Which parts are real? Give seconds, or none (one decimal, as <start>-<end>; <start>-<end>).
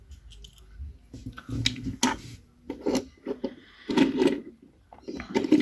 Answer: 0.0-5.6